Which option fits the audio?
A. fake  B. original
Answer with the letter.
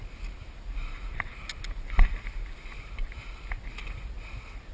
B